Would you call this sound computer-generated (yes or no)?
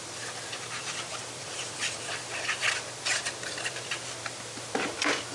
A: yes